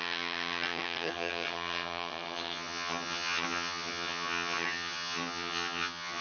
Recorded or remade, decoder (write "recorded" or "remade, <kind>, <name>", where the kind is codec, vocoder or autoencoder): remade, vocoder, HiFi-GAN